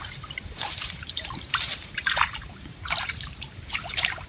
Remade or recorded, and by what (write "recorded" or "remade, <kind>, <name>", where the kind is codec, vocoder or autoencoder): remade, vocoder, BigVGAN v2